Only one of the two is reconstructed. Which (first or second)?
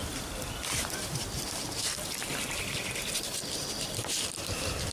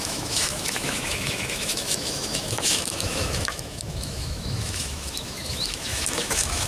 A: second